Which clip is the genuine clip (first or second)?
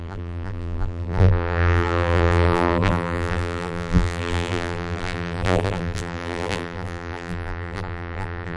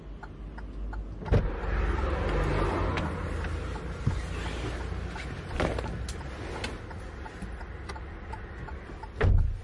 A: second